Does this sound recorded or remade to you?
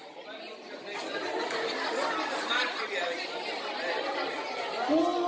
recorded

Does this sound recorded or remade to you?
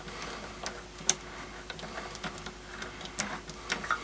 recorded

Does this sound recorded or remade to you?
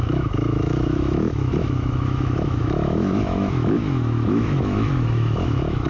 remade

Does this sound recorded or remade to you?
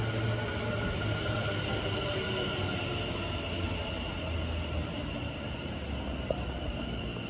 recorded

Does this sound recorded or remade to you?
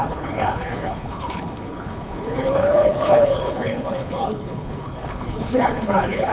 remade